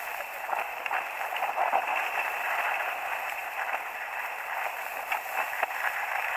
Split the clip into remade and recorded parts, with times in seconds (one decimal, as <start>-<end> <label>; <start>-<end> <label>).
0.0-6.4 recorded